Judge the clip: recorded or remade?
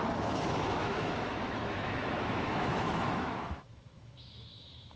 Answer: remade